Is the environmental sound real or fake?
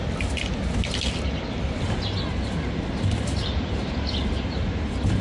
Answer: real